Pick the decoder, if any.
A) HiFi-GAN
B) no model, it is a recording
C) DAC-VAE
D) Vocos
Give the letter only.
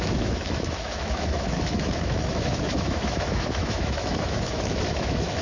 C